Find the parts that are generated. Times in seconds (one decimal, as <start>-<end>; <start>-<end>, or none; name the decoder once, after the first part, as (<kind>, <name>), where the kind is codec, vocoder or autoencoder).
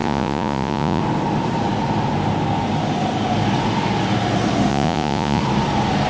0.0-1.0 (vocoder, Vocos); 4.7-5.4